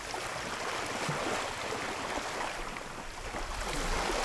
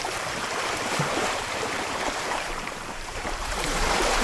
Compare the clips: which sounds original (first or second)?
first